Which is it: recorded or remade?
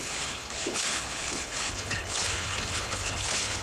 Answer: remade